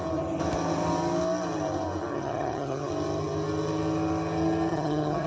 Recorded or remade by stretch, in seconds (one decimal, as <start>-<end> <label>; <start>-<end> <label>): 0.0-2.1 recorded; 2.1-2.9 remade; 2.9-4.7 recorded; 4.7-5.3 remade